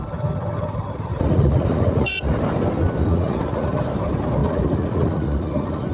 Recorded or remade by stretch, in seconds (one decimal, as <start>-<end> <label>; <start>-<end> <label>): 0.0-1.1 recorded; 1.1-2.4 remade; 2.4-3.0 recorded; 3.0-3.8 remade; 3.8-4.4 recorded; 4.4-5.9 remade